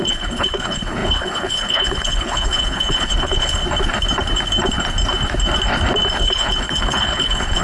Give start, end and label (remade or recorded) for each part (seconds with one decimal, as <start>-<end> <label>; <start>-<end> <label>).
0.0-3.6 remade; 3.6-6.2 recorded; 6.2-7.6 remade